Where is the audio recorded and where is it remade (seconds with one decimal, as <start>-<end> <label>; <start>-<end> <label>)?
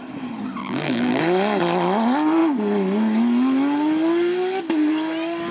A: 0.0-0.6 recorded; 0.6-1.2 remade; 1.2-5.5 recorded